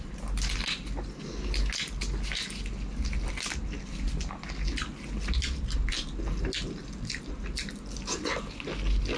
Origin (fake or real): real